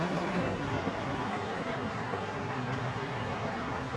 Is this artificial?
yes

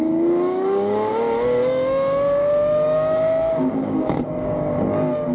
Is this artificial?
yes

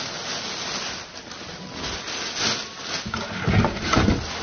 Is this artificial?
no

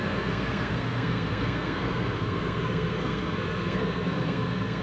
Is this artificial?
yes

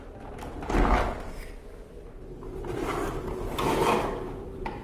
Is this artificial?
no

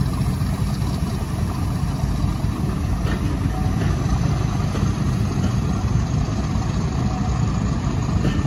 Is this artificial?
no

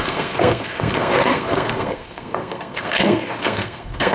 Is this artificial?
yes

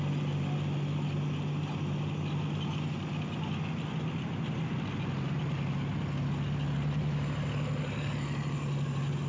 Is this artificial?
no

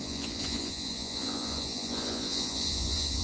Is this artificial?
yes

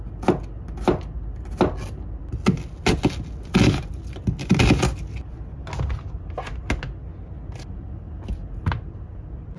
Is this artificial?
no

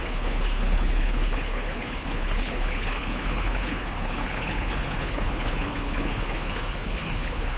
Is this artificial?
yes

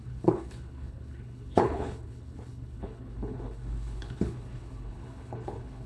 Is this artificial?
yes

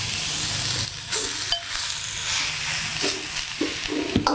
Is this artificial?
no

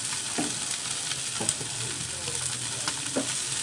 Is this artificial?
no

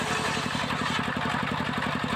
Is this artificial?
no